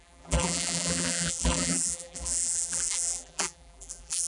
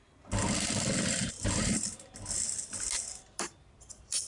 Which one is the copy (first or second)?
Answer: first